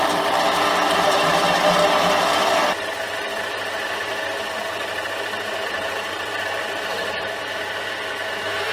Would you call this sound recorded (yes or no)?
no